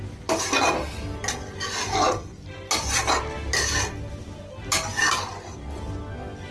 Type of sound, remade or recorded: recorded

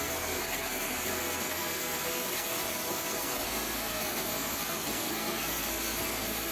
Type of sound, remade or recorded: remade